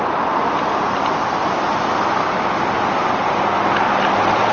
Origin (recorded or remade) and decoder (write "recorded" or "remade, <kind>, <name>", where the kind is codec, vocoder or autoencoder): recorded